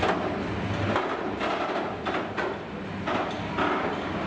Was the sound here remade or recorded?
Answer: recorded